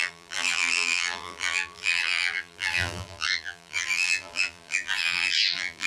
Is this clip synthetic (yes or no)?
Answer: yes